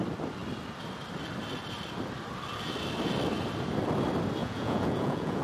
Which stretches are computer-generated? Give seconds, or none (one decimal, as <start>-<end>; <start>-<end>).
4.4-5.4